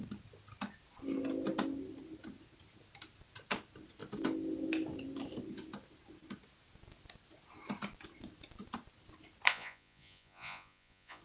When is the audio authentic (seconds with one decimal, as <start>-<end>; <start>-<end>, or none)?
0.0-9.5